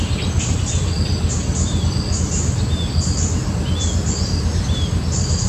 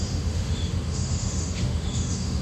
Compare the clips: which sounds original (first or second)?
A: first